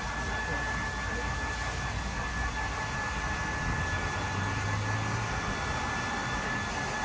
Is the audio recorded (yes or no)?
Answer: yes